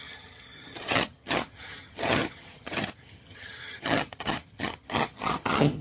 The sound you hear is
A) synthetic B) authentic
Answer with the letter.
A